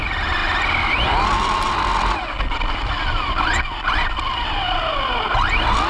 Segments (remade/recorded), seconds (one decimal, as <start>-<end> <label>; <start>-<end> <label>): 0.0-5.9 recorded